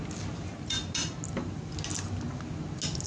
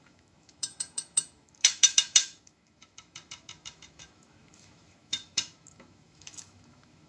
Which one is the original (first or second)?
first